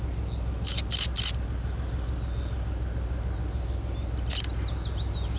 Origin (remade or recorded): recorded